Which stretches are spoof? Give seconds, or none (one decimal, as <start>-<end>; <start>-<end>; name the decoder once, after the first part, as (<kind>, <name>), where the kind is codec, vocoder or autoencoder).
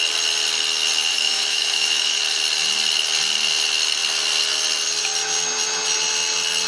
1.1-2.2 (autoencoder, DAC-VAE)